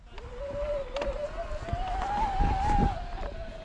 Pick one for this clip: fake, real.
real